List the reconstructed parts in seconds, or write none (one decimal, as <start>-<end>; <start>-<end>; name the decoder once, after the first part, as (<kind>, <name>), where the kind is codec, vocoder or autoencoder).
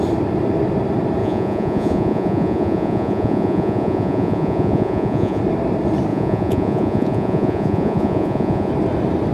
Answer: 1.2-5.4 (vocoder, Vocos); 6.1-8.7